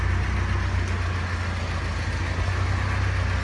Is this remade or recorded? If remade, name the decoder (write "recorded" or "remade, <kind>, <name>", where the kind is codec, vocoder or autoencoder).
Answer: recorded